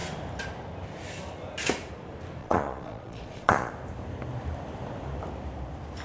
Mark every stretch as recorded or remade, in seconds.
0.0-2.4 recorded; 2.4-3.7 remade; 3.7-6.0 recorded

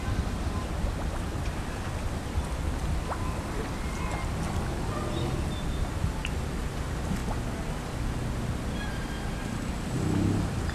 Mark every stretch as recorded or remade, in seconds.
0.0-10.7 recorded

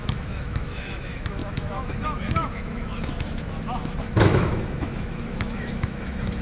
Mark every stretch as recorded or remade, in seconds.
0.0-6.4 remade

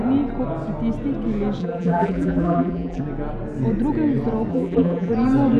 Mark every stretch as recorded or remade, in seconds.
0.0-1.6 recorded; 1.6-3.0 remade; 3.0-4.5 recorded; 4.5-5.1 remade; 5.1-5.6 recorded

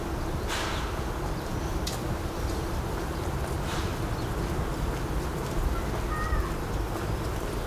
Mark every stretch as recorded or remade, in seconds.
0.0-1.7 recorded; 1.7-3.8 remade; 3.8-7.7 recorded

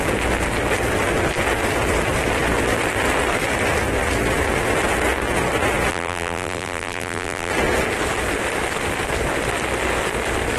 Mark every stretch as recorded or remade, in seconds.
0.0-5.9 recorded; 5.9-7.5 remade; 7.5-10.6 recorded

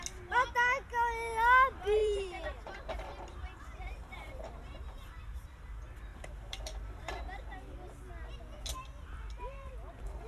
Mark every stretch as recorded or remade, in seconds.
0.0-2.0 recorded; 2.0-2.9 remade; 2.9-3.4 recorded; 3.4-5.6 remade; 5.6-6.1 recorded; 6.1-7.2 remade; 7.2-10.3 recorded

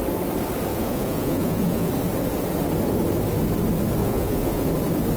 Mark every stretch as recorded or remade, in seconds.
0.0-0.7 recorded; 0.7-1.9 remade; 1.9-4.0 recorded; 4.0-4.7 remade; 4.7-5.2 recorded